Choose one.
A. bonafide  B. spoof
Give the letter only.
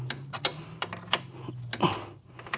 A